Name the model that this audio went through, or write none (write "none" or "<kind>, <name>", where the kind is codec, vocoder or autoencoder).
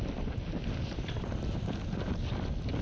none